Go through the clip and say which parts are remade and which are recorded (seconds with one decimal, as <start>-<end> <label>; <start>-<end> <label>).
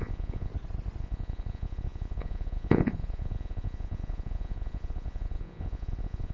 0.0-0.5 remade; 0.5-1.0 recorded; 1.0-6.3 remade